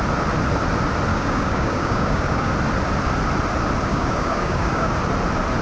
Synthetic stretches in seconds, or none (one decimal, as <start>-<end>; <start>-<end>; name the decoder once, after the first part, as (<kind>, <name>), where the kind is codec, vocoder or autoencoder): 1.1-2.5 (codec, DAC); 3.9-4.9